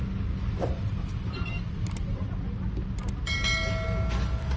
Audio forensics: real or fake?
real